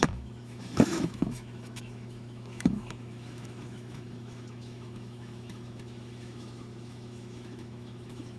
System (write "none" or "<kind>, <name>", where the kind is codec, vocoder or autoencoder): autoencoder, DAC-VAE